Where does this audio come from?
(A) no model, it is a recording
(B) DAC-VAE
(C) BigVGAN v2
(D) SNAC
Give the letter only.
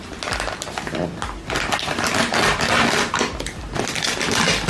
A